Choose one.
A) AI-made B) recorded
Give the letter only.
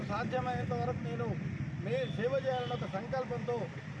B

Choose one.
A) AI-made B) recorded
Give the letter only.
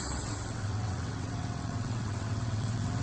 A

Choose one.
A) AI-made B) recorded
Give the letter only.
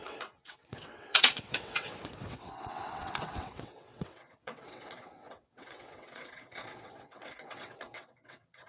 A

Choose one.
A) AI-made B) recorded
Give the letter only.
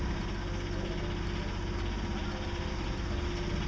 B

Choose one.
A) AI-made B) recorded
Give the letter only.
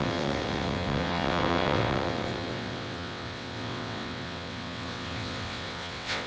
A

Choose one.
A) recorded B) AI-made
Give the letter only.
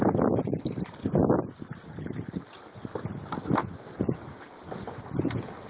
A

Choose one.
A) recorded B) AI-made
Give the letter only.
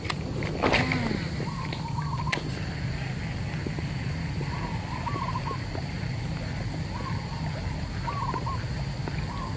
A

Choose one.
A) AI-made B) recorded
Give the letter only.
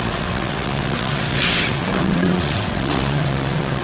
A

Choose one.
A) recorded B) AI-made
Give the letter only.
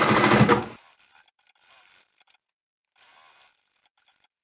A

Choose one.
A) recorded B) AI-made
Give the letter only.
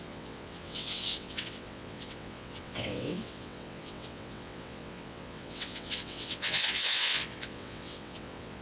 B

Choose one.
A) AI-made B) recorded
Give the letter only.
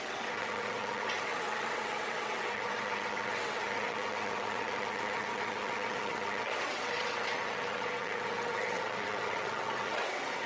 A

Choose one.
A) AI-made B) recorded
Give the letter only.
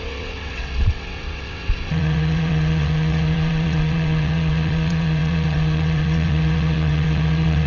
A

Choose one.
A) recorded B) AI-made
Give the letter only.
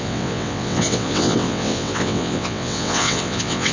B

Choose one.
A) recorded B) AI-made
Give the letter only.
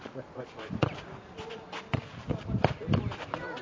A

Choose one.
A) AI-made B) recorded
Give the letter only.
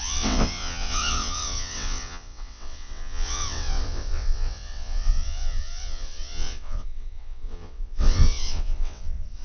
A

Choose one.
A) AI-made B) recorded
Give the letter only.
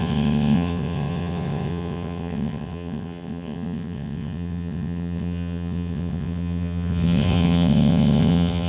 A